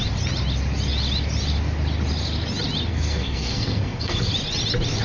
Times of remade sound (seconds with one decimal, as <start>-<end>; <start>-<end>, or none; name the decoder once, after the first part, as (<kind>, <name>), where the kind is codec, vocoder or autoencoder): 2.9-4.3 (codec, SNAC)